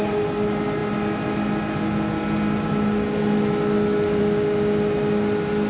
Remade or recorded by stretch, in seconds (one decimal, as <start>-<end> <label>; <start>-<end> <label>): 0.0-5.7 recorded